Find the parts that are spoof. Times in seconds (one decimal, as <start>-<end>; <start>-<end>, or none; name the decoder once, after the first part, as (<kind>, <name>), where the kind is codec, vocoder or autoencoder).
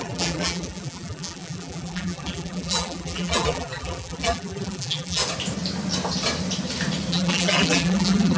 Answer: 0.0-5.2 (vocoder, BigVGAN v2); 7.1-8.4